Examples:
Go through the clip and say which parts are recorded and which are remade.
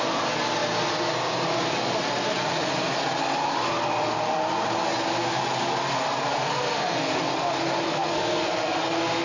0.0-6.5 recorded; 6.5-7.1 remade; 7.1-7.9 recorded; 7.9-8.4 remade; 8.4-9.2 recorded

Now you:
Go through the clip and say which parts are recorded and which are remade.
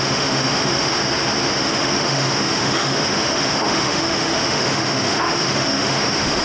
0.0-1.0 remade; 1.0-1.6 recorded; 1.6-6.4 remade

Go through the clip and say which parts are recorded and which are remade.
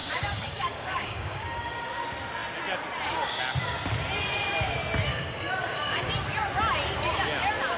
0.0-1.9 remade; 1.9-5.1 recorded; 5.1-6.1 remade; 6.1-7.8 recorded